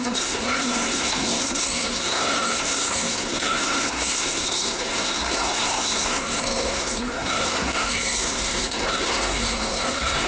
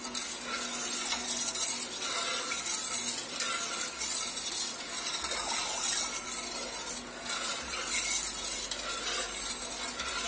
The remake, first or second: first